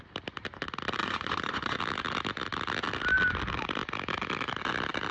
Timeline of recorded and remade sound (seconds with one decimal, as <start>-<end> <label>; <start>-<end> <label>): 0.0-1.0 recorded; 1.0-1.8 remade; 1.8-5.1 recorded